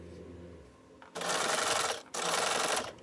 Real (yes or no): yes